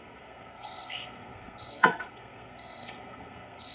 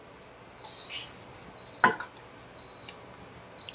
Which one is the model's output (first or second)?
first